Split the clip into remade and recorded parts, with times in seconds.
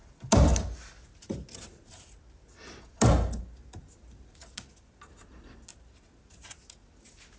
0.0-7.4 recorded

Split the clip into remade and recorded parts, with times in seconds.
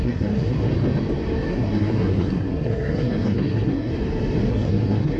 0.0-0.7 remade; 0.7-1.5 recorded; 1.5-3.9 remade; 3.9-4.5 recorded; 4.5-5.2 remade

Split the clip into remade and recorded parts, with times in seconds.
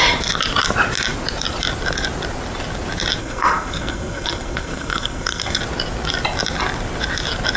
0.0-3.2 recorded; 3.2-5.6 remade; 5.6-7.6 recorded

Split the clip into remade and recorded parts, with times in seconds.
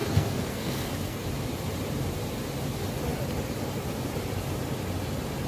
0.0-1.2 remade; 1.2-5.5 recorded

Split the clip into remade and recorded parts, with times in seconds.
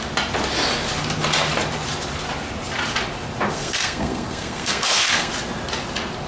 0.0-3.5 recorded; 3.5-5.3 remade; 5.3-6.3 recorded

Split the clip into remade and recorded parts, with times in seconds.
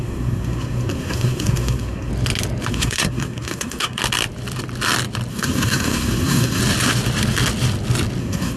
0.0-2.1 remade; 2.1-2.7 recorded; 2.7-4.0 remade; 4.0-5.3 recorded; 5.3-6.6 remade; 6.6-8.2 recorded; 8.2-8.6 remade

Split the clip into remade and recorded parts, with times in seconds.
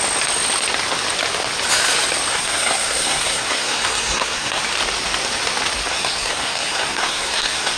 0.0-2.3 recorded; 2.3-4.6 remade; 4.6-5.9 recorded; 5.9-7.8 remade